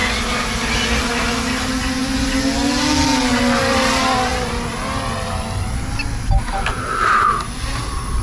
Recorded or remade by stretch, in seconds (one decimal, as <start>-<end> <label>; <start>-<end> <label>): 0.0-8.2 recorded